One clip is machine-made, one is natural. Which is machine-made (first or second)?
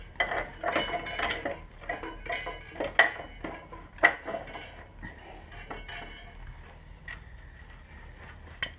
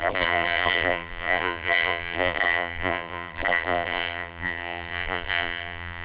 second